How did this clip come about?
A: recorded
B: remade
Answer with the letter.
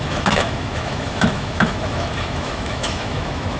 B